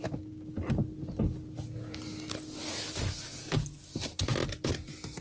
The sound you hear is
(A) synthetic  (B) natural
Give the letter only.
B